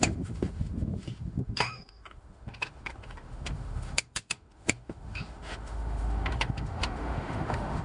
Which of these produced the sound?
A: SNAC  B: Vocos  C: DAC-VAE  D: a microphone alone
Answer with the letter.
C